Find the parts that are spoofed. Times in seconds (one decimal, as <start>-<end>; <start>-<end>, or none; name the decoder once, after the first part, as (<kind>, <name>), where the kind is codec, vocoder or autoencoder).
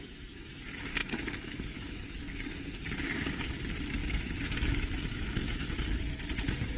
1.0-2.8 (autoencoder, DAC-VAE); 4.0-5.7